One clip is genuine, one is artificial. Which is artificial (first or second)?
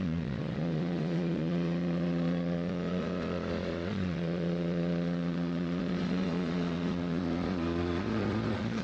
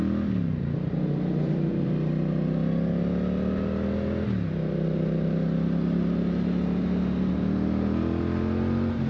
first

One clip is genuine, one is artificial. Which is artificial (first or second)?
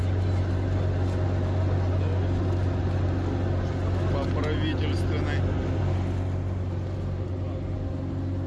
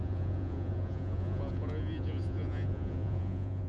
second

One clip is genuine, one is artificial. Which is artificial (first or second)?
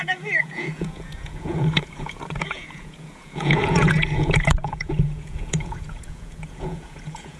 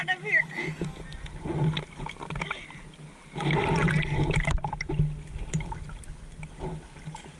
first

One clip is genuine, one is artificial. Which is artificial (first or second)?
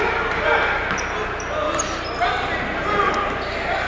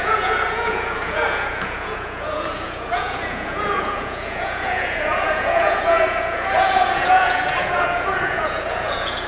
second